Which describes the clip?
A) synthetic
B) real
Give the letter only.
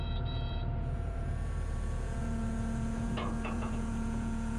A